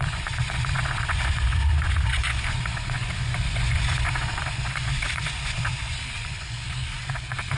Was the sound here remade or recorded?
remade